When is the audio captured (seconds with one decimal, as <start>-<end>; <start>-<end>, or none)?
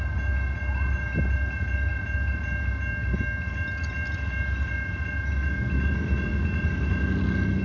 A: 0.0-7.6